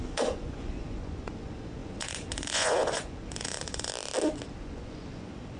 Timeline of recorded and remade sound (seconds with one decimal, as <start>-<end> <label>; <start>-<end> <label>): 0.0-3.9 remade; 3.9-4.6 recorded; 4.6-5.6 remade